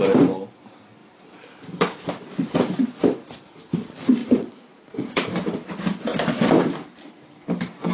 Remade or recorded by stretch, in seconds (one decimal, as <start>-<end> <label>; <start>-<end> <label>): 0.0-4.2 recorded; 4.2-5.3 remade; 5.3-7.9 recorded